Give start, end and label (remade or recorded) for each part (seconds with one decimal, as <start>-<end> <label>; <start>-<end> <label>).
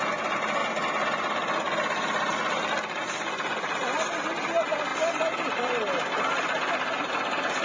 0.0-7.6 recorded